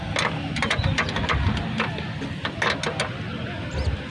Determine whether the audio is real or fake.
real